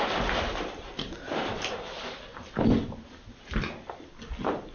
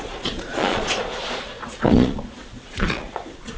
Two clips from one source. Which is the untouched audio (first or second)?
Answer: first